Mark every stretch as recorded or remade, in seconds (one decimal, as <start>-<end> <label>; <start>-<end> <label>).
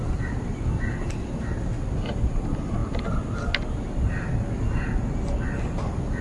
0.0-6.2 recorded